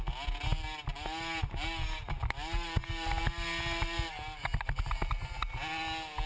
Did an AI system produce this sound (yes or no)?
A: no